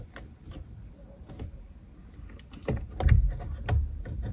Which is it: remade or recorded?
recorded